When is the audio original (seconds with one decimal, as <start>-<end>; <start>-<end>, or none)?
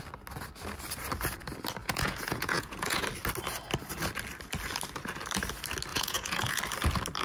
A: 0.0-1.8; 3.0-5.9; 6.6-7.2